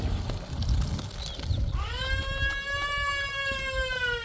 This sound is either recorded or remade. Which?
recorded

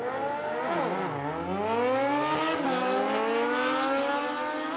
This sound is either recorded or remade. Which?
recorded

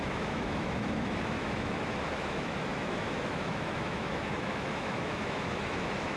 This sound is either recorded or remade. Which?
remade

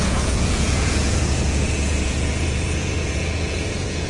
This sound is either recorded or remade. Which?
remade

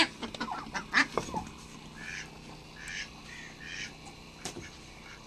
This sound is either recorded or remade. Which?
recorded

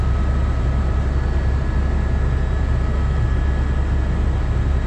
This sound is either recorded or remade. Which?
recorded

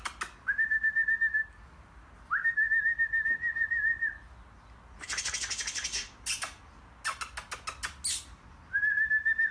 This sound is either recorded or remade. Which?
recorded